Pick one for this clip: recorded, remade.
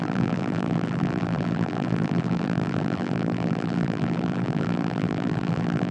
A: remade